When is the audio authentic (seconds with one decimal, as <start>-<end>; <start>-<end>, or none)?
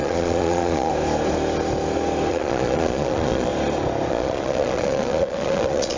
0.9-2.3; 3.5-4.1